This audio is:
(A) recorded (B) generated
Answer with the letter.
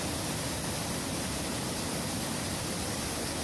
A